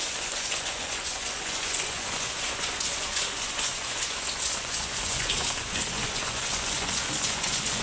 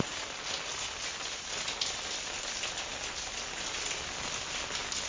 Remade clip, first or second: first